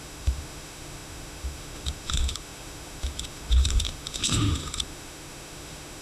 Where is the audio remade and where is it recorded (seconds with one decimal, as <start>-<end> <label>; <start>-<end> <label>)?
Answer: 0.0-6.0 remade